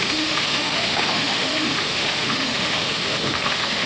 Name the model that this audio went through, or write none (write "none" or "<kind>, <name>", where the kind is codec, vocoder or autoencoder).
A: autoencoder, DAC-VAE